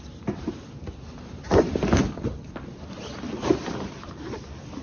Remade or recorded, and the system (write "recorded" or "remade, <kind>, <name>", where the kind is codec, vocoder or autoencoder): remade, vocoder, BigVGAN v2